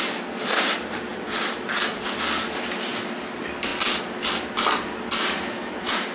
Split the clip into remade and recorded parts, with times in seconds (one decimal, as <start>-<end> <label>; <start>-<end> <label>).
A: 0.0-1.1 recorded; 1.1-3.2 remade; 3.2-3.7 recorded; 3.7-4.3 remade; 4.3-6.1 recorded